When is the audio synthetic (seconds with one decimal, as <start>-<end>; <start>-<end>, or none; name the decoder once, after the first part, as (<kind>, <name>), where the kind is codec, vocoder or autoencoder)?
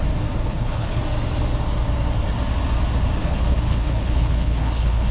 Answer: 0.4-1.0 (codec, HILCodec); 3.2-5.1